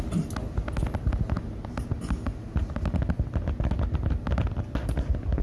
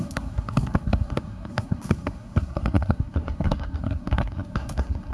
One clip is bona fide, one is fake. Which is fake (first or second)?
second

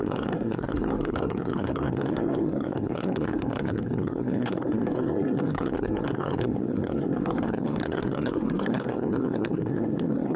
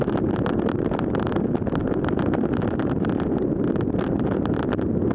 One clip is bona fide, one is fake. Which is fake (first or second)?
first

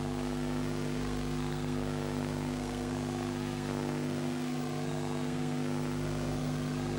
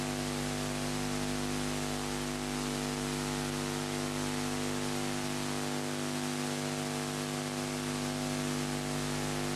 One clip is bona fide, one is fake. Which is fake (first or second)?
first